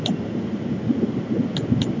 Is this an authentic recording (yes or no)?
yes